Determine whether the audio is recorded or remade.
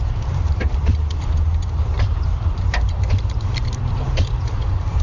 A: remade